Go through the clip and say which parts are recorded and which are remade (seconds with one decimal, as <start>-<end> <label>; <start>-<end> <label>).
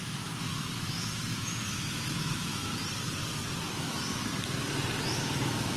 0.0-2.7 remade; 2.7-3.6 recorded; 3.6-4.3 remade; 4.3-5.0 recorded; 5.0-5.8 remade